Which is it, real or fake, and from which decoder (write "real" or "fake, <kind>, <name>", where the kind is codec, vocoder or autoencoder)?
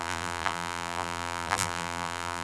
fake, vocoder, BigVGAN v2